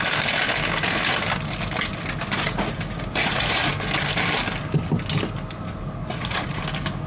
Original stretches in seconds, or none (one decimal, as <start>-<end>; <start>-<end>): 0.0-3.2; 3.7-6.0; 6.6-7.1